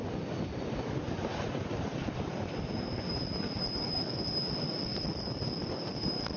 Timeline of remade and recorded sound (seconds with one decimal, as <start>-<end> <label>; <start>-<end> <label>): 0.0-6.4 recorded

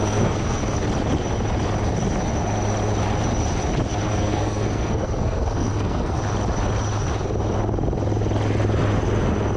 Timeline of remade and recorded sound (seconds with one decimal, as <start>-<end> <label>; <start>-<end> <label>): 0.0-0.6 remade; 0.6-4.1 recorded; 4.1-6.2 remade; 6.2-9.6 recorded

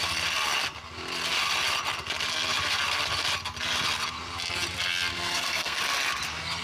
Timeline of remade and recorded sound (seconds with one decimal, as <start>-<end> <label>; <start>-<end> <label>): 0.0-5.1 recorded; 5.1-5.8 remade; 5.8-6.6 recorded